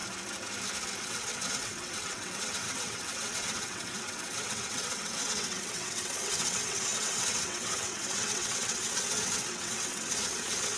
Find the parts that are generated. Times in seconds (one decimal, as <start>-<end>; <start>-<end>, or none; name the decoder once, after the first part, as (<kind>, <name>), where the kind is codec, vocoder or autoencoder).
1.0-10.8 (vocoder, WaveNeXt)